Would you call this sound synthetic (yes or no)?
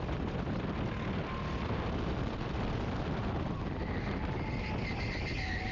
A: no